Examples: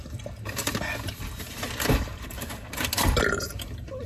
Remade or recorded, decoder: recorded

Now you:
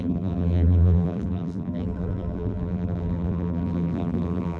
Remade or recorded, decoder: remade, vocoder, BigVGAN v2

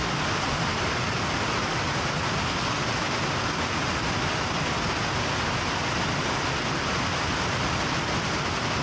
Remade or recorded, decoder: recorded